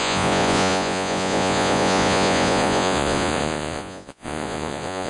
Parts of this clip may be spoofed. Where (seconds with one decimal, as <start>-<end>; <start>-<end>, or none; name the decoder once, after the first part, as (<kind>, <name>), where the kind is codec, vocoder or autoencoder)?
0.0-5.1 (vocoder, Vocos)